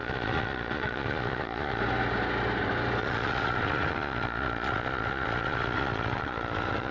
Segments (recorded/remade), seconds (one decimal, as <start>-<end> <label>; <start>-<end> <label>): 0.0-1.8 remade; 1.8-3.0 recorded; 3.0-6.9 remade